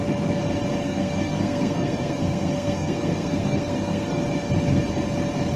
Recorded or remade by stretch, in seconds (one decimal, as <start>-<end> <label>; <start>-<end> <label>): 0.0-0.8 recorded; 0.8-4.2 remade; 4.2-5.6 recorded